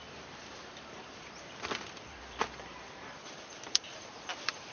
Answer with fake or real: fake